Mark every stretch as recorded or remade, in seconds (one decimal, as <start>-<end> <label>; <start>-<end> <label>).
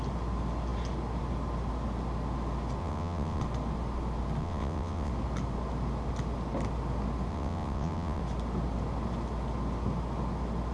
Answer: 0.0-2.8 recorded; 2.8-3.4 remade; 3.4-4.4 recorded; 4.4-5.1 remade; 5.1-7.3 recorded; 7.3-8.2 remade; 8.2-10.7 recorded